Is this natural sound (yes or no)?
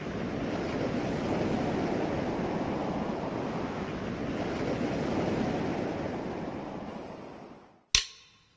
yes